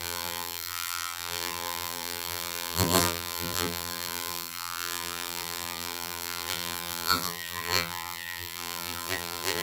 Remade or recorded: remade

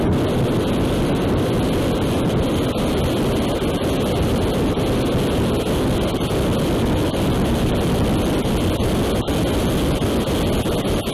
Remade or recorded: recorded